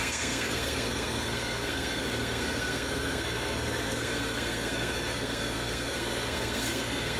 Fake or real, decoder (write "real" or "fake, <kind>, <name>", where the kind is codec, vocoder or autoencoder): fake, codec, SNAC